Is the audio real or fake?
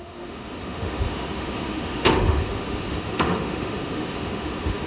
fake